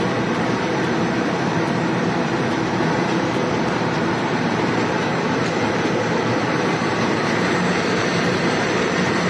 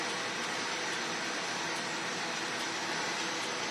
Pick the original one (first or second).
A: second